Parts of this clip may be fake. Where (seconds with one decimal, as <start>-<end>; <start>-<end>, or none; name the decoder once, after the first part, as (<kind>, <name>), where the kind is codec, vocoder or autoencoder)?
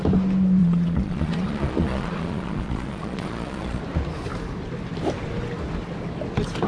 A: 0.6-3.8 (vocoder, Vocos)